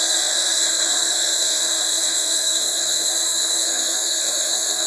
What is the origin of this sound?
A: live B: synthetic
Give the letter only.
B